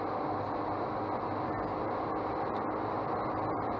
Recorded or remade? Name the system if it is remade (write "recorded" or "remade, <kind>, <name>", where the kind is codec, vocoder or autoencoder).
recorded